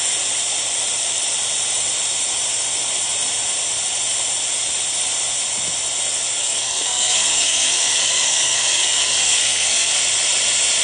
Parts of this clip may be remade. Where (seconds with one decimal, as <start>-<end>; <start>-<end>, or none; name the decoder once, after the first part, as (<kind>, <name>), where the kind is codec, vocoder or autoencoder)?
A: 6.4-10.0 (codec, SNAC)